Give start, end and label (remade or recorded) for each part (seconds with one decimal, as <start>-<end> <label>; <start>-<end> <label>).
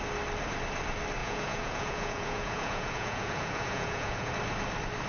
0.0-1.2 recorded; 1.2-4.3 remade; 4.3-5.1 recorded